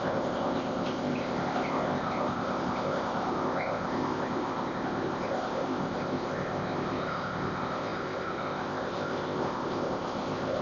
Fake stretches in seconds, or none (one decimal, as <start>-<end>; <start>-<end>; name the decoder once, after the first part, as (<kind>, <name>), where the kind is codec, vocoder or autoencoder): 0.0-10.6 (codec, ZipCodec)

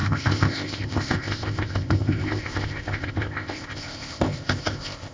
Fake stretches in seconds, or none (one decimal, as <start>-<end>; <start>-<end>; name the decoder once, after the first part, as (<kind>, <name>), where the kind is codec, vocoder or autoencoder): 0.0-5.1 (codec, ZipCodec)

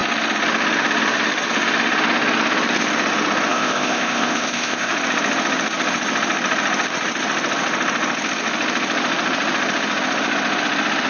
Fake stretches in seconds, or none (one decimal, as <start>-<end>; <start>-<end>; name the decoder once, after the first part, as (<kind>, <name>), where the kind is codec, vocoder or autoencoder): 3.5-4.9 (codec, ZipCodec)

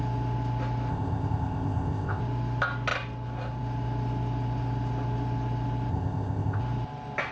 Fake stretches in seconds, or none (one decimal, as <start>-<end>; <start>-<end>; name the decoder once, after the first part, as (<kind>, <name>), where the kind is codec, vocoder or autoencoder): 0.9-2.2 (codec, ZipCodec); 5.9-6.6

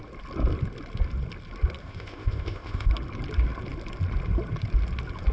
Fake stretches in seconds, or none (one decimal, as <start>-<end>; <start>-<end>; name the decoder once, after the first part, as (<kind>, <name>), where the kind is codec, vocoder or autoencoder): 1.8-2.9 (codec, ZipCodec)